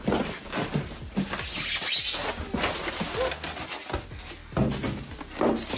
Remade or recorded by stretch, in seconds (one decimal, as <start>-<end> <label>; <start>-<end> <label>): 0.0-5.8 recorded